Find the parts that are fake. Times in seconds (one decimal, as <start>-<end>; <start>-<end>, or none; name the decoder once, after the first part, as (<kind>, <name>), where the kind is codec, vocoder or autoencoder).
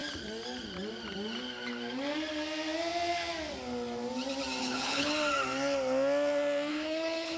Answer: 4.6-5.1 (codec, HILCodec); 6.7-7.4